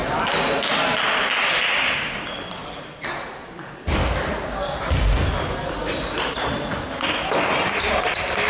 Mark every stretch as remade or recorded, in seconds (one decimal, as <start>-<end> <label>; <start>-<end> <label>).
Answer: 0.0-8.5 recorded